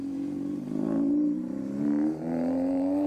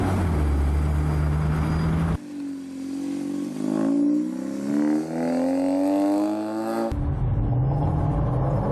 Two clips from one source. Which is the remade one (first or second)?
first